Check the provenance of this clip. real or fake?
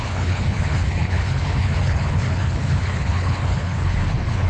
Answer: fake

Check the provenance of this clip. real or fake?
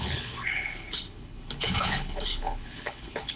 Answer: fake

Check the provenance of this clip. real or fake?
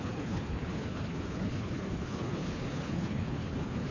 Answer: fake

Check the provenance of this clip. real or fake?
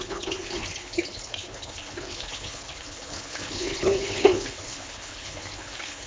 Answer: fake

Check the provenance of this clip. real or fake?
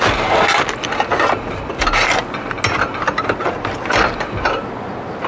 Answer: real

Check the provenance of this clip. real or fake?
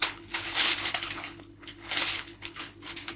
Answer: fake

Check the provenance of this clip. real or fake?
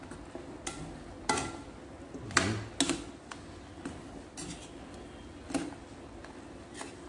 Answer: real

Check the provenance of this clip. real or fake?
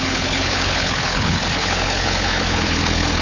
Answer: fake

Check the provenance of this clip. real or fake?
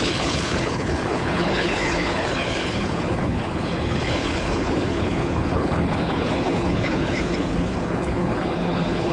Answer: fake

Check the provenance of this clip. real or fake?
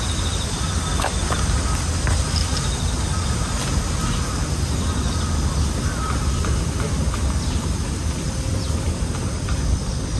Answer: real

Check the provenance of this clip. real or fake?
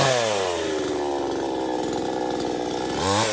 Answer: real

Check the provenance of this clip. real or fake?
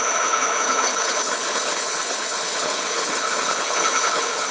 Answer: fake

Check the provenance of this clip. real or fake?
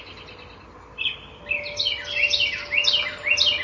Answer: real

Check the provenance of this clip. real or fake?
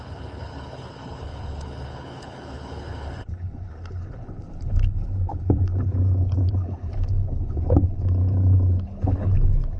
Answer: fake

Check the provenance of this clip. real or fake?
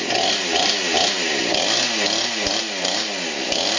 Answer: real